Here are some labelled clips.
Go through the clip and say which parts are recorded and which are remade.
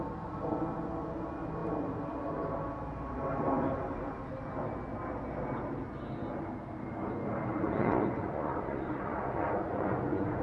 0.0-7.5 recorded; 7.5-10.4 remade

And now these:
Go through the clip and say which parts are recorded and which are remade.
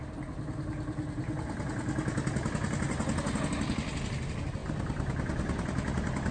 0.0-4.6 recorded; 4.6-6.3 remade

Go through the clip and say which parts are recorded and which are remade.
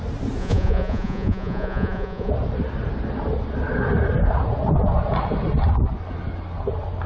0.0-0.4 recorded; 0.4-2.3 remade; 2.3-7.1 recorded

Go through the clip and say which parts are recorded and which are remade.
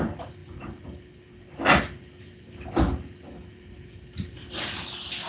0.0-5.3 recorded